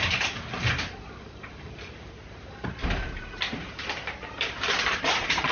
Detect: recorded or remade remade